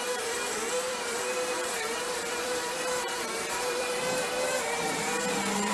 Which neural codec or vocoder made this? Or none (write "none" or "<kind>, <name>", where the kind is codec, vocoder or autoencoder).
vocoder, BigVGAN v2